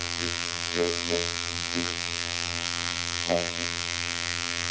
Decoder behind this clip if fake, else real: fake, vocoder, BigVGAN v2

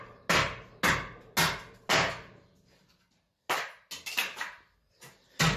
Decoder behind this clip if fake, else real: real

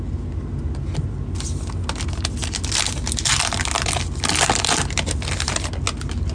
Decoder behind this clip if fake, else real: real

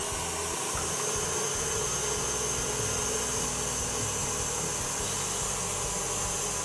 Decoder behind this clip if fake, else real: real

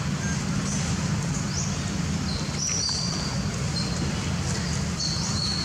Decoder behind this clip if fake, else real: real